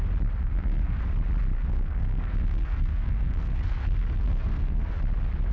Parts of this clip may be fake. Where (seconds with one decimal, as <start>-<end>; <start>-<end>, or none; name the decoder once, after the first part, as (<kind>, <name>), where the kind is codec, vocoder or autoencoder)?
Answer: 0.4-1.0 (codec, SNAC); 1.6-4.9